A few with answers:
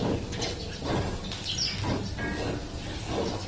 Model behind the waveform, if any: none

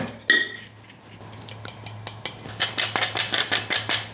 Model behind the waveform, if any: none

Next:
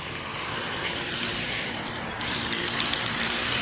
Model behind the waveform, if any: vocoder, BigVGAN v2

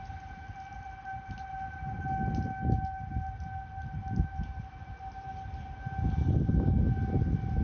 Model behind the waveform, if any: none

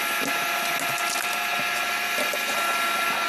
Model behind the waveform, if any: none